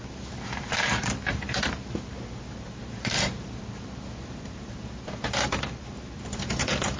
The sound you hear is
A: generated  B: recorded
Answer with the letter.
A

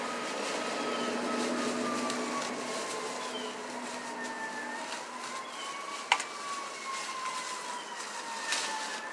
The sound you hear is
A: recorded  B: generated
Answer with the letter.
A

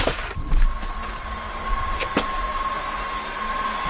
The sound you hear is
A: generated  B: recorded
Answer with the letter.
A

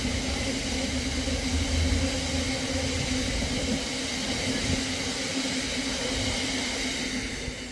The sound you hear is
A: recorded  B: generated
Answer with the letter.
A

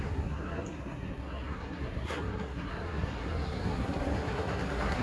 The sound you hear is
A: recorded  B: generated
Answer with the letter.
B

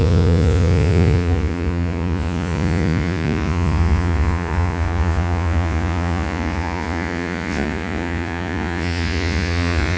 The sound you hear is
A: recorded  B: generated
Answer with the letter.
B